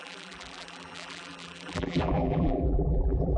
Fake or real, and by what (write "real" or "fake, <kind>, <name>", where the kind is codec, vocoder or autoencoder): fake, vocoder, BigVGAN v2